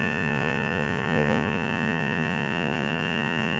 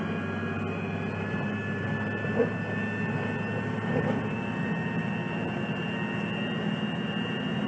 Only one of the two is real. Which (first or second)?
second